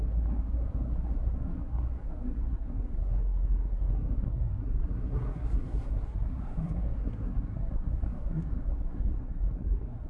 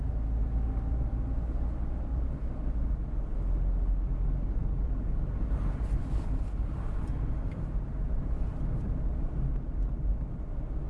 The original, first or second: second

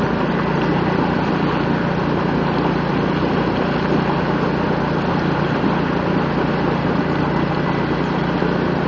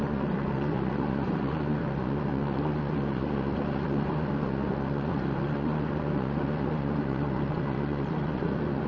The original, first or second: first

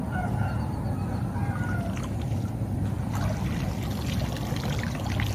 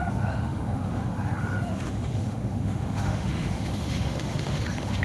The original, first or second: first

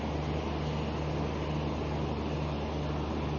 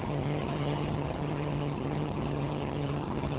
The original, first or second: first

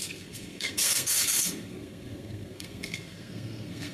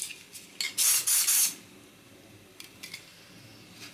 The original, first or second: second